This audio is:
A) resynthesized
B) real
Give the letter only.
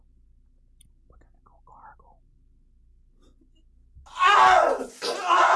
B